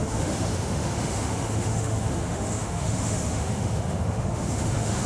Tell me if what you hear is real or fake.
fake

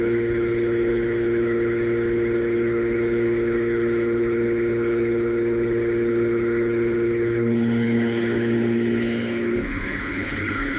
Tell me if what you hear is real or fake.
fake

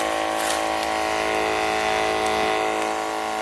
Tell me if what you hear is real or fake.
real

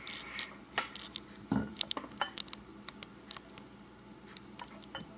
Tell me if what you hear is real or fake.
real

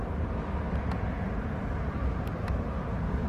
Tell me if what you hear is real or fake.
real